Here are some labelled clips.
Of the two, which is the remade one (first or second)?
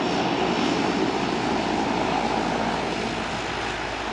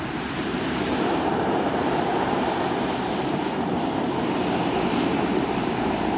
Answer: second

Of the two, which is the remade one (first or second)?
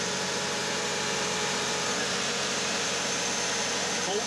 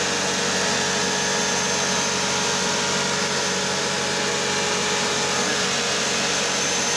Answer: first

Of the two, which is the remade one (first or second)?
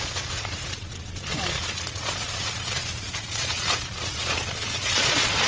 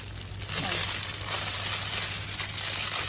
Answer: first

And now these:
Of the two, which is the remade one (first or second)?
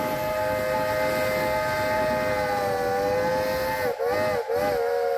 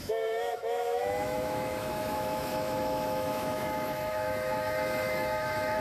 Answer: second